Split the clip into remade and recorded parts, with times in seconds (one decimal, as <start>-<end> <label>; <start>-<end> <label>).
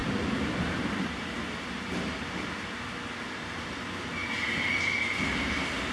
0.0-2.7 remade; 2.7-4.2 recorded; 4.2-5.0 remade; 5.0-5.9 recorded